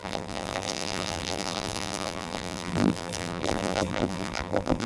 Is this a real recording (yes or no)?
no